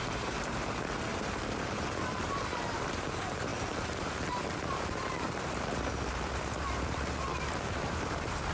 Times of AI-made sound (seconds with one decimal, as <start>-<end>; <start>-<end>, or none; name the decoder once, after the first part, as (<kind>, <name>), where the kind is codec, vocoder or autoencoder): 0.0-8.5 (vocoder, BigVGAN v2)